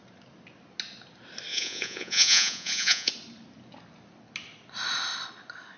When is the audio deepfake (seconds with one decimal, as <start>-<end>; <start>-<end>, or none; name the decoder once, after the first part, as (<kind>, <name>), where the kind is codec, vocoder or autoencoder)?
1.5-3.1 (vocoder, Vocos)